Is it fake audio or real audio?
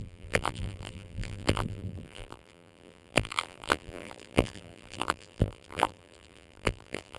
fake